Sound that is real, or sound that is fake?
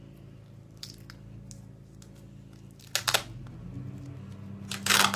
real